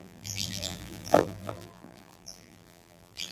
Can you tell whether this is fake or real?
fake